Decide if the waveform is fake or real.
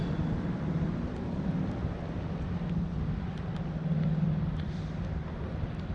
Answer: real